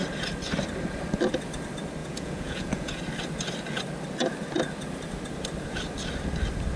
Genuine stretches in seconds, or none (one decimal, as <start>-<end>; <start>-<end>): 0.0-2.0; 3.0-6.8